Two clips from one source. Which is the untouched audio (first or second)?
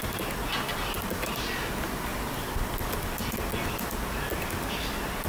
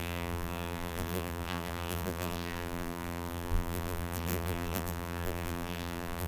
first